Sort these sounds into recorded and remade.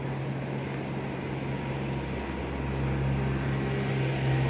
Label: recorded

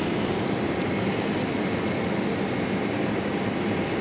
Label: recorded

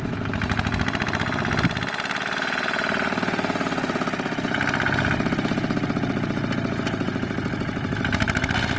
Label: recorded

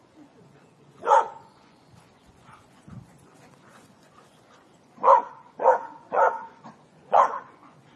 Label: remade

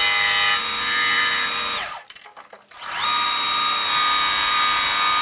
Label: recorded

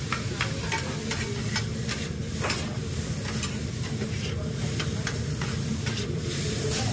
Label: recorded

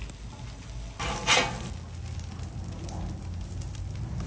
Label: recorded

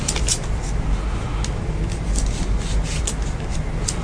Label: recorded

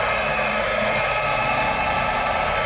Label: recorded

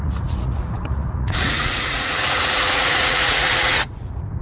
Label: remade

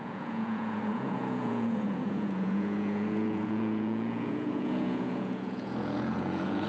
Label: remade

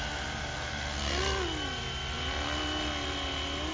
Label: recorded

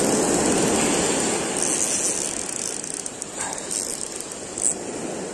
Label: recorded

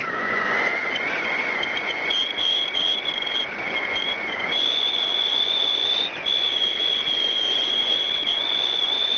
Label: remade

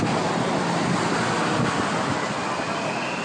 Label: recorded